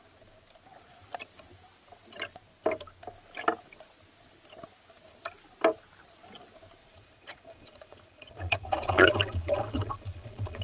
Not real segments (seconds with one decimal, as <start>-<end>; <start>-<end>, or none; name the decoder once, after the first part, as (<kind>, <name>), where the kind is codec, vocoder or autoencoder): 6.8-10.6 (vocoder, Vocos)